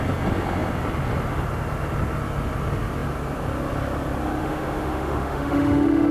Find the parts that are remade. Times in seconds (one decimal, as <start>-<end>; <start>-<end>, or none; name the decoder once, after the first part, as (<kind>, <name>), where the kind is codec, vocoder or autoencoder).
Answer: 4.4-6.1 (autoencoder, DAC-VAE)